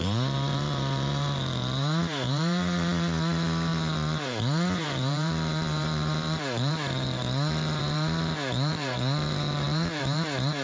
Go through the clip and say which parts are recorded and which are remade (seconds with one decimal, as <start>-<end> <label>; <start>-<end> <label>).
0.0-10.6 remade